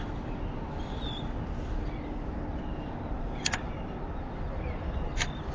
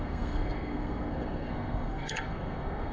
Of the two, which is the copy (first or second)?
second